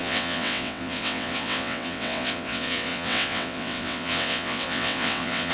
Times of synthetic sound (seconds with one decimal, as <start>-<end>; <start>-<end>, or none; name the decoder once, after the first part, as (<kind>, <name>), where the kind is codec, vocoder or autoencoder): 0.0-5.5 (vocoder, WaveNeXt)